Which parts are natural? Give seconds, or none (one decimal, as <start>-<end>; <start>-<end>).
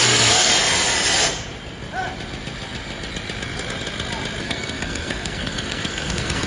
0.5-4.4